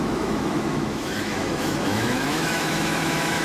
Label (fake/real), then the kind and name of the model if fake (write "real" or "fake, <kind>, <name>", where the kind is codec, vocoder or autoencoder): fake, autoencoder, DAC-VAE